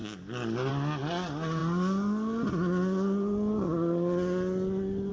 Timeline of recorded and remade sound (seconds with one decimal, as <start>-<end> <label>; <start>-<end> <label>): 0.0-5.1 recorded